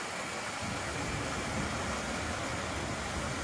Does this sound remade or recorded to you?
recorded